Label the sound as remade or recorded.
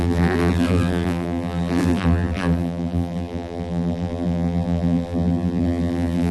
remade